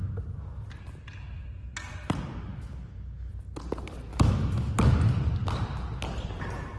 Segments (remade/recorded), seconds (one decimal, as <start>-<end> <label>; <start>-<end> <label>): 0.0-2.5 recorded; 2.5-3.3 remade; 3.3-4.1 recorded; 4.1-4.7 remade; 4.7-6.8 recorded